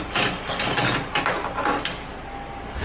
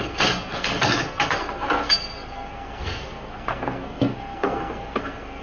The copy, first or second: second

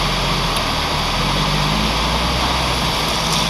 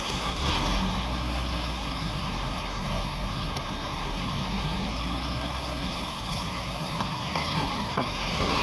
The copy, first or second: second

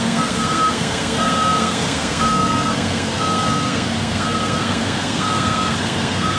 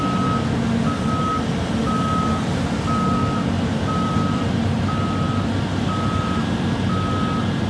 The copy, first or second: first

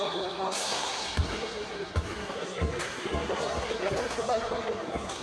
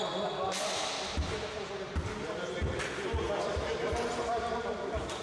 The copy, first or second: first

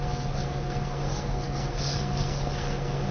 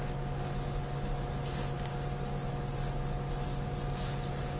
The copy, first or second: first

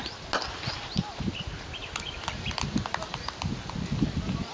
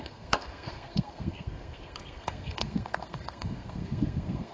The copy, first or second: second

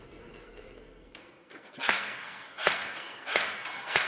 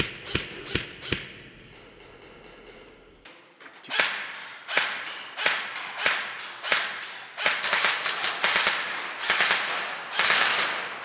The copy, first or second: first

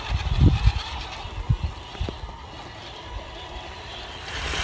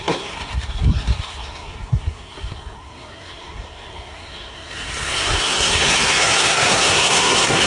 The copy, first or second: second